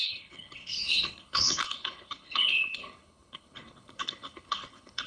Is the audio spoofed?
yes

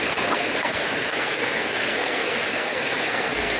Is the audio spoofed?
yes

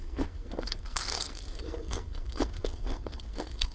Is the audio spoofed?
yes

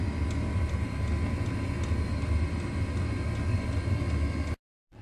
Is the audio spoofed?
no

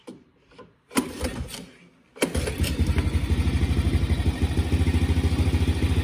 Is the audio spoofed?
no